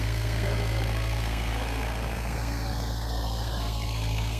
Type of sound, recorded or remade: remade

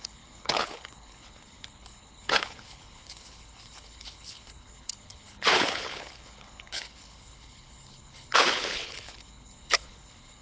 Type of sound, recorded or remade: remade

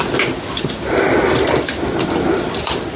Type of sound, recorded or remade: recorded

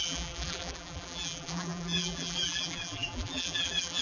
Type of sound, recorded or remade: remade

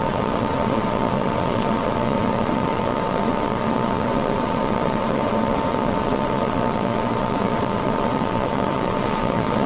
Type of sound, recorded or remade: remade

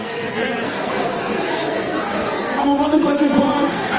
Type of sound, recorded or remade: remade